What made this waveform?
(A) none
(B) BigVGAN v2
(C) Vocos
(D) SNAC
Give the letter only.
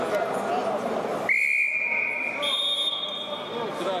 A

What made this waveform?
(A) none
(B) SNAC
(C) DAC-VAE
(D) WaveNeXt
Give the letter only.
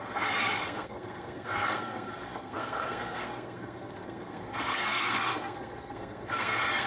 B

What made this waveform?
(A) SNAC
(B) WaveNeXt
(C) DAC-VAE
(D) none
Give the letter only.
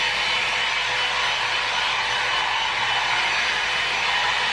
D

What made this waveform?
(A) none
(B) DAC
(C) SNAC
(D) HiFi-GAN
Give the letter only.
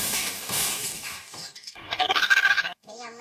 B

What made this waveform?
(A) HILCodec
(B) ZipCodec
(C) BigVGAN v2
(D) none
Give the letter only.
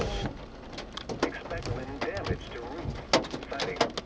D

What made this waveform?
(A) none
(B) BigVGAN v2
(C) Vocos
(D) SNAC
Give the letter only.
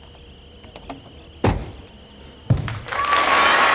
A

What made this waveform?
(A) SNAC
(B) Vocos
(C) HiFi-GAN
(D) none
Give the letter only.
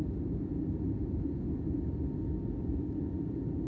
D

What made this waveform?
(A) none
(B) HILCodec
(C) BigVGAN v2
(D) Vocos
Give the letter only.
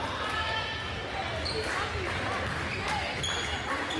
A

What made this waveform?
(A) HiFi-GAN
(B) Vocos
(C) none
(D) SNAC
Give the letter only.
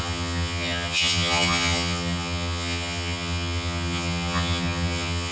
A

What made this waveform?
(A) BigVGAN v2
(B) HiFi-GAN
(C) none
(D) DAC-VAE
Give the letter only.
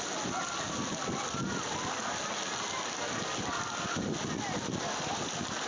C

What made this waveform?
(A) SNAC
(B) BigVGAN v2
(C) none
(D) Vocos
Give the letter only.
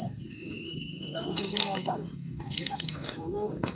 A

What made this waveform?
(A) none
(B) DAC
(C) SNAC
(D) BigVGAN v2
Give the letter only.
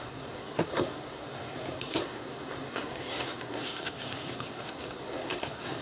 C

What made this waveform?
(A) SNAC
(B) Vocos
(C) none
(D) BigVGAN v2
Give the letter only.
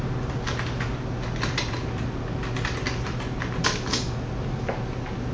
C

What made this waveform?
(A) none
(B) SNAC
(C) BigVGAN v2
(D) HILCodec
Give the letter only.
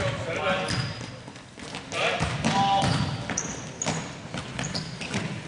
A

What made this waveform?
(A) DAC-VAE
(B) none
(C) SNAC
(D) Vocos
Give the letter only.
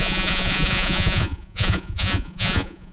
D